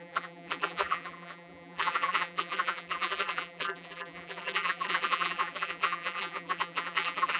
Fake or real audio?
fake